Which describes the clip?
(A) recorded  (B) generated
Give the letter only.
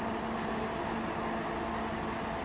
A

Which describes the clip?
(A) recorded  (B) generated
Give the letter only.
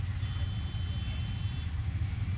A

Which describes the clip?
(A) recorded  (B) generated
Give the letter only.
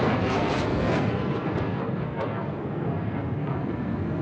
B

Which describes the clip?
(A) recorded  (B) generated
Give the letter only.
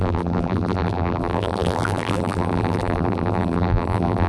B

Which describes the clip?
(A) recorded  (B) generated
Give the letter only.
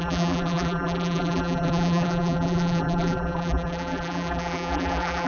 B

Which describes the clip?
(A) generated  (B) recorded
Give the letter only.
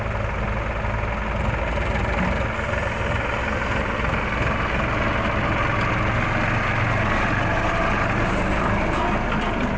B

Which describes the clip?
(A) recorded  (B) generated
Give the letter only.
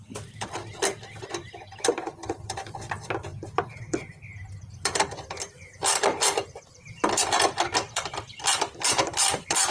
B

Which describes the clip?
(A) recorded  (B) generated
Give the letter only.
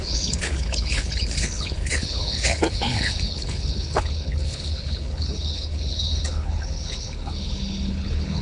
B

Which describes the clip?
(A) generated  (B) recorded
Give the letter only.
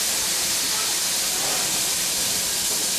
B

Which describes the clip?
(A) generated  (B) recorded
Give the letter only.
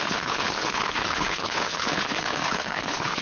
A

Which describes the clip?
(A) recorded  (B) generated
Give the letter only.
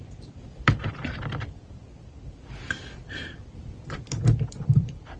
B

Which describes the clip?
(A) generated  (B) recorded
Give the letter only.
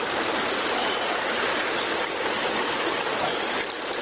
B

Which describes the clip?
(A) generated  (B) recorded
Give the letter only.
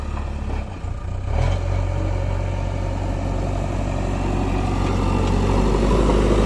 B